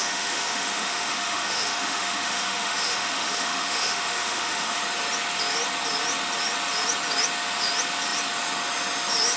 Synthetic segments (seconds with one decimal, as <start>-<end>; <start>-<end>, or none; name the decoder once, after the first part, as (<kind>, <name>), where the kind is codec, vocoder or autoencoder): 0.0-4.8 (autoencoder, DAC-VAE)